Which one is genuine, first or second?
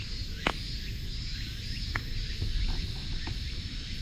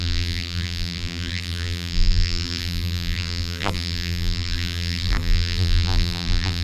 first